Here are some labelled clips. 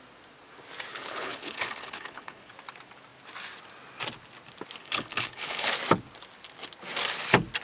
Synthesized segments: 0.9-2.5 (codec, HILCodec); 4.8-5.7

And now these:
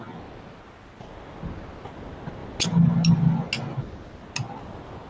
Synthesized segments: none

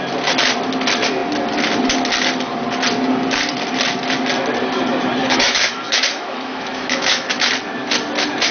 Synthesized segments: 5.2-7.5 (autoencoder, DAC-VAE)

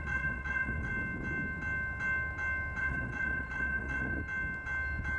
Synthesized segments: 0.0-0.9 (vocoder, Vocos); 2.8-4.2

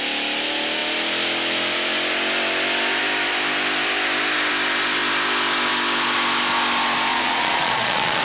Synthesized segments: 7.1-8.2 (vocoder, Vocos)

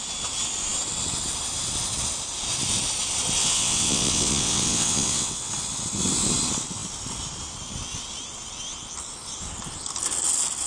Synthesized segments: 3.4-5.5 (vocoder, WaveNeXt)